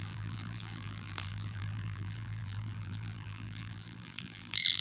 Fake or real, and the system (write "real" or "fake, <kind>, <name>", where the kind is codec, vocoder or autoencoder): fake, vocoder, BigVGAN v2